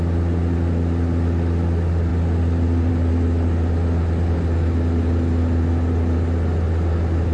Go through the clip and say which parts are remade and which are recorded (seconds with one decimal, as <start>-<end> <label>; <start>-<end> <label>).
0.0-7.3 recorded